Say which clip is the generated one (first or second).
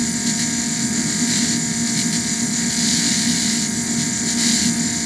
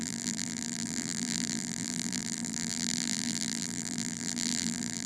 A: second